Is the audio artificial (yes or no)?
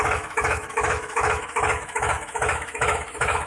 yes